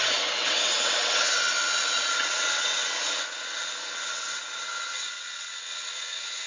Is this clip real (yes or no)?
no